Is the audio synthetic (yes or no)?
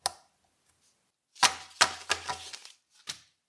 no